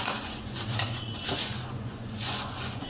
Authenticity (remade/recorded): remade